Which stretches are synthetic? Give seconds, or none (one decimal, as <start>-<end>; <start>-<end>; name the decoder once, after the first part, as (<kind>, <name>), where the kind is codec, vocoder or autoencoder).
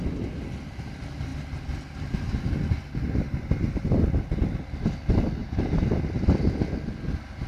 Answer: 5.4-6.0 (vocoder, BigVGAN v2)